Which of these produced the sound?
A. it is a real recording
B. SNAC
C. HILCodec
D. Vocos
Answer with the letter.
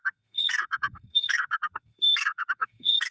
B